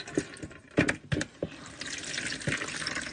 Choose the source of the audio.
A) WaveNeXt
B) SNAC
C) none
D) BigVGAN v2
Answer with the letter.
C